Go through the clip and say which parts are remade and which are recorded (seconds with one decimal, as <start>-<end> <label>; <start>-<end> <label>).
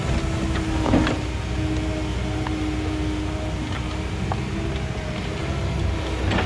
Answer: 0.0-6.5 recorded